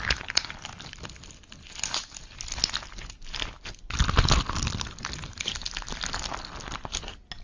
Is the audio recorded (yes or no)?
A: yes